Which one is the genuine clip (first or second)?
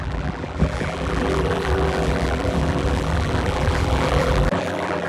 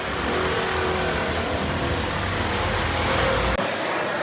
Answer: second